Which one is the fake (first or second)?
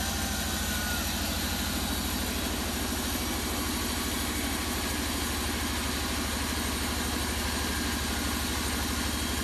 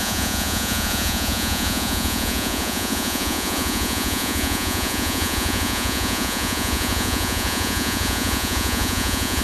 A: second